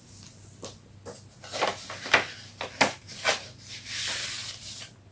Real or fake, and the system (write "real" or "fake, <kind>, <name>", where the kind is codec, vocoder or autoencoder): real